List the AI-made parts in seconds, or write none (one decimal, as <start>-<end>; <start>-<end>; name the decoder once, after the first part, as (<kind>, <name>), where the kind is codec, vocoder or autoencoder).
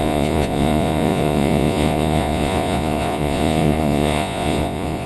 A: 0.0-5.1 (vocoder, Vocos)